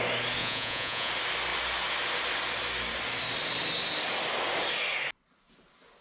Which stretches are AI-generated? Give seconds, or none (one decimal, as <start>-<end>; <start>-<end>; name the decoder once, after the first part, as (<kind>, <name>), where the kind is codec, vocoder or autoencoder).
0.4-1.1 (vocoder, Vocos)